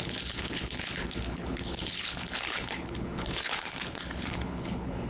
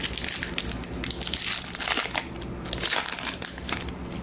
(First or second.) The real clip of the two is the second